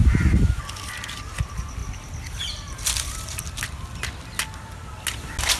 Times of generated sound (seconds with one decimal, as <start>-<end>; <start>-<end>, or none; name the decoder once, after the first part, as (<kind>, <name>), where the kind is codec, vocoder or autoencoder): 0.0-0.6 (vocoder, BigVGAN v2)